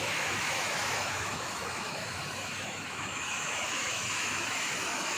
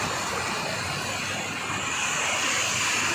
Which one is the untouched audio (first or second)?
second